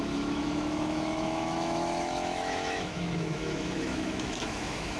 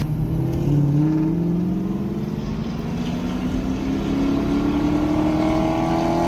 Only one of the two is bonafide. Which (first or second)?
second